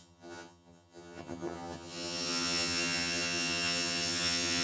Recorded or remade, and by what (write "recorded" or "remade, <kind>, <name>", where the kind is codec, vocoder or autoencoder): remade, vocoder, HiFi-GAN